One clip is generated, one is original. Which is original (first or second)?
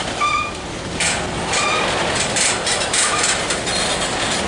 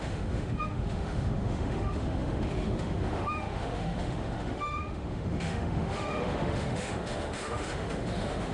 first